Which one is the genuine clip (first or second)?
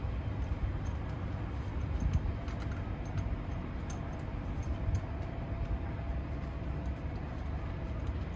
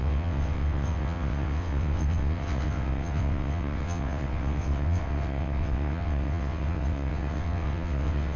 first